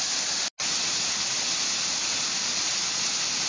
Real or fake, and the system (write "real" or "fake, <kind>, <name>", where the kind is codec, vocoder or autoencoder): real